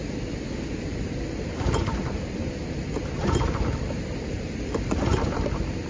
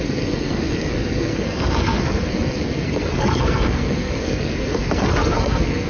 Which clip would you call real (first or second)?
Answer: first